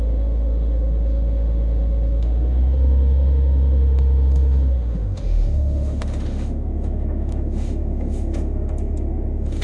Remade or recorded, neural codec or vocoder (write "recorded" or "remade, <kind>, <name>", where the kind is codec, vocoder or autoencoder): remade, autoencoder, DAC-VAE